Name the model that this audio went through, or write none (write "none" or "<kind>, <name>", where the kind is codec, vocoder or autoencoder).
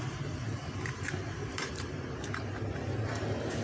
vocoder, BigVGAN v2